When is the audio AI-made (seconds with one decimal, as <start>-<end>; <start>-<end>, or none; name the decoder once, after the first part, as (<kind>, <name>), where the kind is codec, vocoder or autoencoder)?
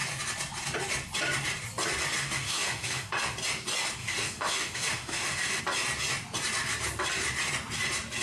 2.2-3.1 (autoencoder, DAC-VAE); 4.0-5.6